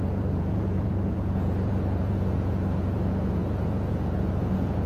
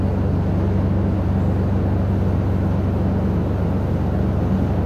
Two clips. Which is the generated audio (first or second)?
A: first